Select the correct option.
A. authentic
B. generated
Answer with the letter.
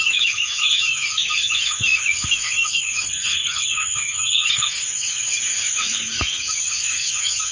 B